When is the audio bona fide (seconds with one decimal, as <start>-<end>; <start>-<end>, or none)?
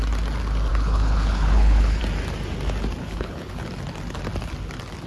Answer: 0.0-0.7; 2.0-3.0; 3.7-5.1